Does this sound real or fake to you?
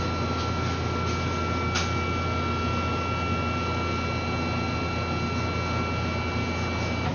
real